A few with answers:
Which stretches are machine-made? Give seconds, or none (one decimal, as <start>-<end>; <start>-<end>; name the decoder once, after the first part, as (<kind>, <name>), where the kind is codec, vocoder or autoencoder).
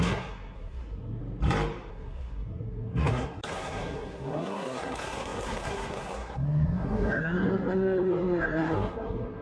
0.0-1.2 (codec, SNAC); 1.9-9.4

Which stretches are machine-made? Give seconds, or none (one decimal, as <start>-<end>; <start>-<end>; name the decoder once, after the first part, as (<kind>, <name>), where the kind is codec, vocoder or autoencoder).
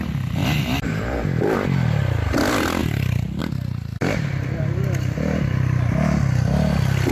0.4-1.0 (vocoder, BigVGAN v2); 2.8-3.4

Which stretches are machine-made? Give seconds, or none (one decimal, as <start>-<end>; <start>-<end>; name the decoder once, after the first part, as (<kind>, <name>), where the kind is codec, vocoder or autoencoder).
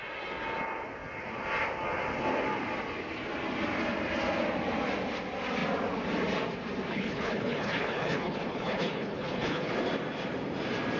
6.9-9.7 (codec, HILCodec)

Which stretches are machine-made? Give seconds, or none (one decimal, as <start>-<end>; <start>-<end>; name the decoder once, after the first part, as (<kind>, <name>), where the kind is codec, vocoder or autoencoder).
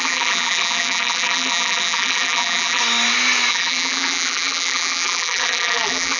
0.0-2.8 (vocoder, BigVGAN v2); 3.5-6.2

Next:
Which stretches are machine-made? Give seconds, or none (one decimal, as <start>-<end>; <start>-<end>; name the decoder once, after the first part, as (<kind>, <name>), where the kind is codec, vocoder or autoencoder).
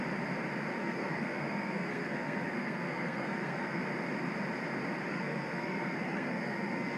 0.8-3.8 (codec, SNAC); 5.1-7.0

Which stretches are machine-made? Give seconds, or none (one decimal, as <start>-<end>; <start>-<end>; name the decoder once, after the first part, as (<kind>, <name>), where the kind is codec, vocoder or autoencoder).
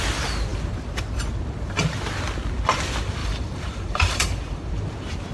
3.2-4.8 (vocoder, BigVGAN v2)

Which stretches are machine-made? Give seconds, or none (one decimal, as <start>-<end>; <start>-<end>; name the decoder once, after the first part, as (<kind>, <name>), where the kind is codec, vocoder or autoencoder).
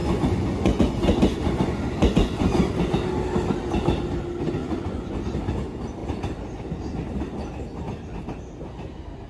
0.0-2.7 (vocoder, Vocos); 4.6-5.2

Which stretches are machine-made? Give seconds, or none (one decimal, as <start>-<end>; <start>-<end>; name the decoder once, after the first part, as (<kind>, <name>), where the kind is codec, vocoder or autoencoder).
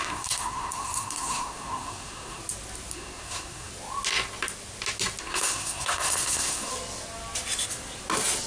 0.0-2.4 (codec, SNAC); 2.9-3.7; 5.2-6.7